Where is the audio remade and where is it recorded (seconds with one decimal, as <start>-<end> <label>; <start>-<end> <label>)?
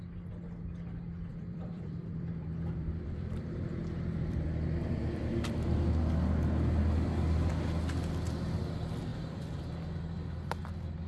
0.0-1.3 recorded; 1.3-5.5 remade; 5.5-9.1 recorded; 9.1-9.6 remade; 9.6-11.1 recorded